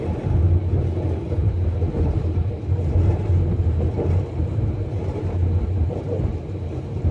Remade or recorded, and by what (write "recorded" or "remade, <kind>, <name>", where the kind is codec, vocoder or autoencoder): remade, vocoder, BigVGAN v2